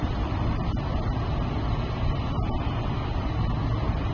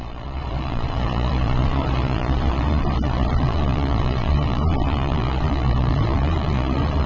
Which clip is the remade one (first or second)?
second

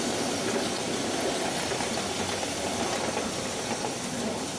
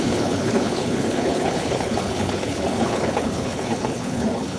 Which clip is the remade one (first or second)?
second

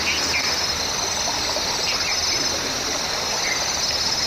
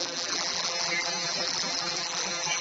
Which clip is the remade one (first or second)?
second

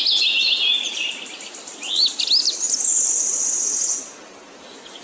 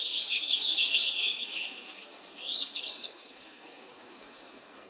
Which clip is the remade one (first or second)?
second